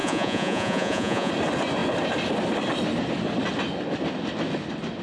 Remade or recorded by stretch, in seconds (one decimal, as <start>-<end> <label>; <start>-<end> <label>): 0.0-1.3 remade; 1.3-5.0 recorded